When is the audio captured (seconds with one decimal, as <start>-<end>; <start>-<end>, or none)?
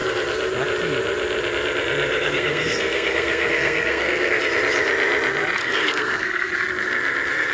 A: 0.0-2.1; 4.4-5.6; 6.5-7.5